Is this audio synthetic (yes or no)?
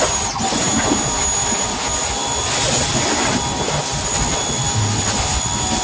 no